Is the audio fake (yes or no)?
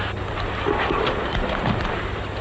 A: no